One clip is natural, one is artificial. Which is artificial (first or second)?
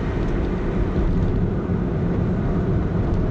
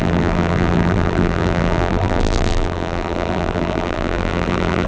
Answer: second